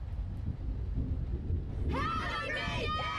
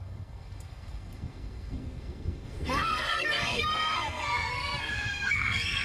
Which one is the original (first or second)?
first